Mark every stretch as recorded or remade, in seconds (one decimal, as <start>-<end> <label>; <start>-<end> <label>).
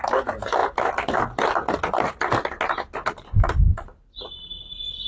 0.0-5.1 recorded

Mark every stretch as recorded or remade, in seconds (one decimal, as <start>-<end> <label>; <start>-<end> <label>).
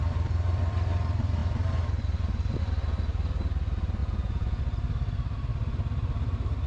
0.0-4.0 recorded; 4.0-4.6 remade; 4.6-6.7 recorded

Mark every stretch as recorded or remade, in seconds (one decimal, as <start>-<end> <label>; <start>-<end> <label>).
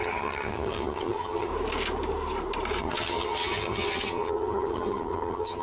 0.0-1.5 remade; 1.5-2.8 recorded; 2.8-5.6 remade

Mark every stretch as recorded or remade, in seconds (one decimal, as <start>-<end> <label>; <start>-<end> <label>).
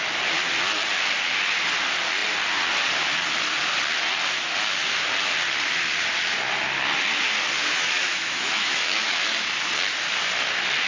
0.0-7.6 recorded; 7.6-9.5 remade; 9.5-10.9 recorded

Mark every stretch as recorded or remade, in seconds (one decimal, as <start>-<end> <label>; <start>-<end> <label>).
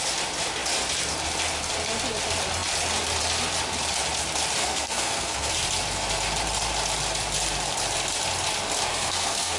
0.0-4.6 recorded; 4.6-5.5 remade; 5.5-8.9 recorded; 8.9-9.6 remade